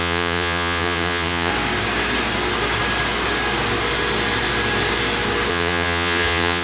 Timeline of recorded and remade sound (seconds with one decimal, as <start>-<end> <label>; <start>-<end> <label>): 0.0-1.5 remade; 1.5-5.5 recorded; 5.5-6.6 remade